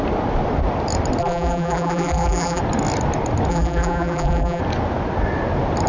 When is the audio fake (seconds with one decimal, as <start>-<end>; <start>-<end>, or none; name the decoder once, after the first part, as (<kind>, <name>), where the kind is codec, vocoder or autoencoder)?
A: 1.2-2.6 (vocoder, BigVGAN v2); 3.5-4.6